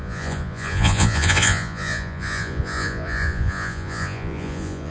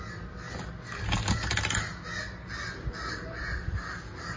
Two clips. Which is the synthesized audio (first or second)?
first